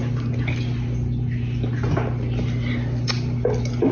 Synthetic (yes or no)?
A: no